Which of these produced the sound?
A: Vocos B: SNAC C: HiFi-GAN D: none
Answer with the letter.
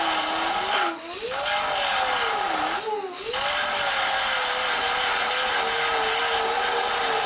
D